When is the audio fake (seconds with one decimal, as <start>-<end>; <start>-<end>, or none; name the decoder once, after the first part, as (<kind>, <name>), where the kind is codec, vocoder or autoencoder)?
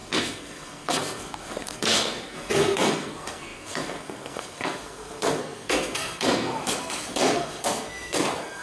0.0-8.6 (codec, SNAC)